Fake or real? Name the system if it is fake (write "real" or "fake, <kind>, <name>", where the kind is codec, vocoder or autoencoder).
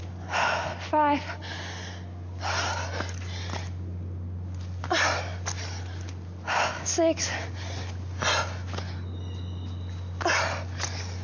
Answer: real